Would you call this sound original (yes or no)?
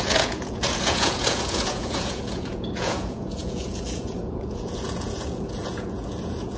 no